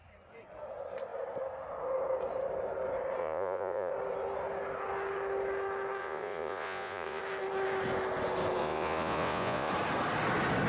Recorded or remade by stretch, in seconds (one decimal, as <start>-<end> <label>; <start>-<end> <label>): 0.0-3.2 recorded; 3.2-3.9 remade; 3.9-6.0 recorded; 6.0-7.2 remade; 7.2-8.6 recorded; 8.6-9.7 remade; 9.7-10.7 recorded